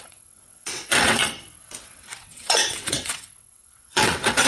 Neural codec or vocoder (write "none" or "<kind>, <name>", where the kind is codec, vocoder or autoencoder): vocoder, WaveNeXt